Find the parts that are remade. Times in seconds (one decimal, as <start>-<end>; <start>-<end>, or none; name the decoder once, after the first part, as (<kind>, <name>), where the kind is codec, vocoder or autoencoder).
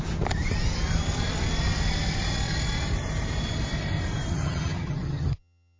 4.3-5.8 (vocoder, HiFi-GAN)